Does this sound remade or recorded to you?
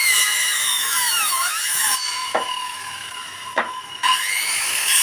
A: remade